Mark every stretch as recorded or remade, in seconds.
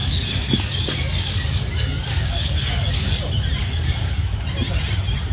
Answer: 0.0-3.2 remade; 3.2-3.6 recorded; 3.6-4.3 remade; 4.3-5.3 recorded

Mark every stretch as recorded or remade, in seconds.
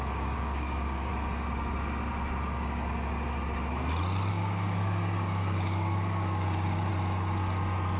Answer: 0.0-1.1 remade; 1.1-4.3 recorded; 4.3-6.9 remade; 6.9-8.0 recorded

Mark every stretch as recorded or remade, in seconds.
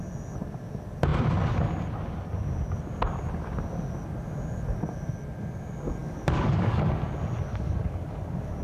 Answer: 0.0-6.0 recorded; 6.0-6.8 remade; 6.8-7.5 recorded; 7.5-8.6 remade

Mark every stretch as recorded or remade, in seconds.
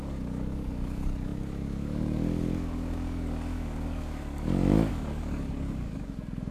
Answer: 0.0-6.5 remade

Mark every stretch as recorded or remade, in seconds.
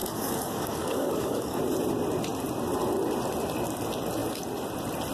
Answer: 0.0-1.6 remade; 1.6-5.1 recorded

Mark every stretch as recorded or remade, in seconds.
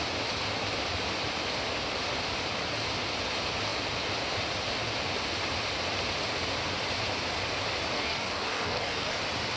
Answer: 0.0-7.9 recorded; 7.9-9.2 remade; 9.2-9.6 recorded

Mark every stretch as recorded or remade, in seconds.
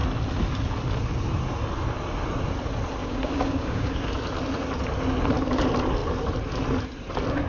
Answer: 0.0-3.0 recorded; 3.0-4.1 remade; 4.1-7.5 recorded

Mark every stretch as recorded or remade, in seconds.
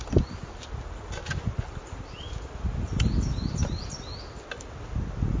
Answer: 0.0-5.4 recorded